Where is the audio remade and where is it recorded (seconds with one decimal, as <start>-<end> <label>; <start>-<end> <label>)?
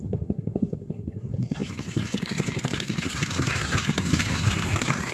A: 0.0-5.1 remade